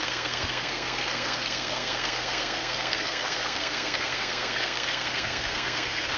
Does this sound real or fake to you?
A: fake